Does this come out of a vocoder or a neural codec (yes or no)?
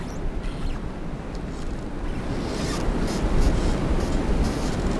no